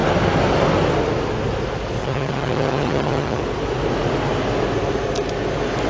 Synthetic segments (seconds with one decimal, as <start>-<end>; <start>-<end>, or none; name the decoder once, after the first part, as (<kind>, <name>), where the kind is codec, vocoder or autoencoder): 2.0-3.4 (vocoder, HiFi-GAN)